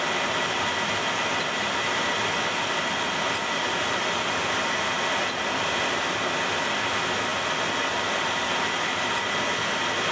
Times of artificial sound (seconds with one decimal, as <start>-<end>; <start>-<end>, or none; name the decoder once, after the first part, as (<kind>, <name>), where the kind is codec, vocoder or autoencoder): none